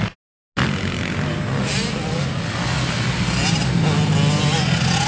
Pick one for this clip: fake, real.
real